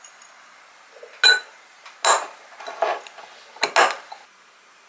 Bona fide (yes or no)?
yes